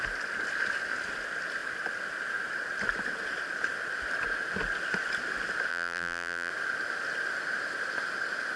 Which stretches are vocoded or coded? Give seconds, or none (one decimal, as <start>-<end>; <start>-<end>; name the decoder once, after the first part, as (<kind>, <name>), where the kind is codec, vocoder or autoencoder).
5.7-6.5 (vocoder, BigVGAN v2)